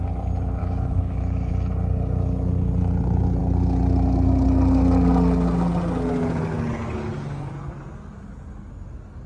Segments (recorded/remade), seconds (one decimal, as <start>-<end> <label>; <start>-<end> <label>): 0.0-0.6 recorded; 0.6-1.5 remade; 1.5-9.3 recorded